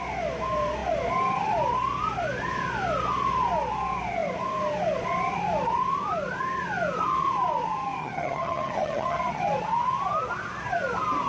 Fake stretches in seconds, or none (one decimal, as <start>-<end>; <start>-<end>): 8.0-9.4